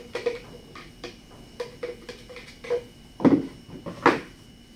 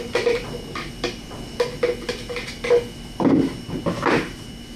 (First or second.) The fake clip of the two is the first